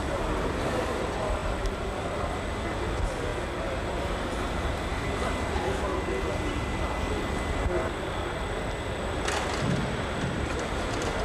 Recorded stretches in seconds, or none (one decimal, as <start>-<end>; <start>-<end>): 0.0-11.2